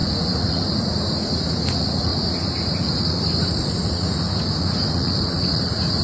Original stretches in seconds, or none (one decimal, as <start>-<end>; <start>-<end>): none